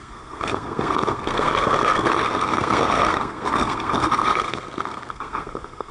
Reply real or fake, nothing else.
fake